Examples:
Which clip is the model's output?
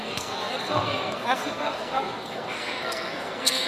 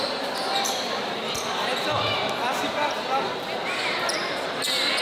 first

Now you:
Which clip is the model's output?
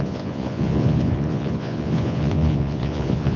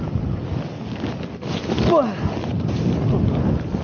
first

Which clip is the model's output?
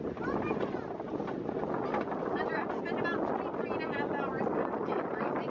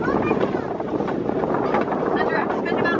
second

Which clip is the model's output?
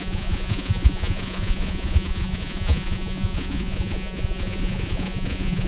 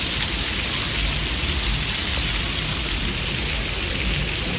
first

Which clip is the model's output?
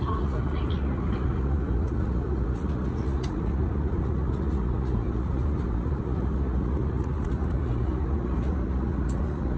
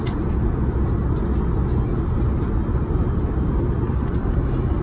first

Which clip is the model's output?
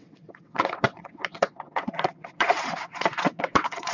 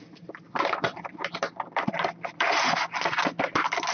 first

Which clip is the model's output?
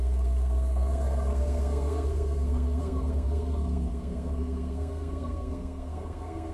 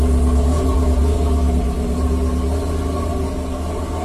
first